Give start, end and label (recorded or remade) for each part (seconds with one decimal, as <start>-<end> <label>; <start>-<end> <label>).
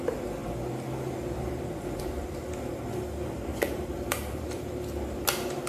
0.0-3.5 recorded; 3.5-4.7 remade; 4.7-5.7 recorded